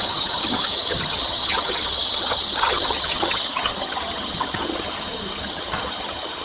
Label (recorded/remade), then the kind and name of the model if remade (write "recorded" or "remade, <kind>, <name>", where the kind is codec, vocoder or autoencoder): remade, vocoder, HiFi-GAN